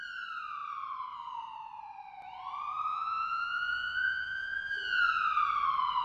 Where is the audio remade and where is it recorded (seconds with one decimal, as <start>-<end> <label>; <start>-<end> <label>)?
0.0-2.9 recorded; 2.9-5.0 remade; 5.0-6.0 recorded